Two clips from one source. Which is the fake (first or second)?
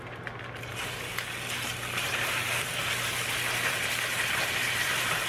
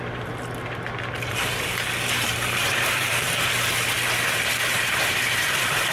second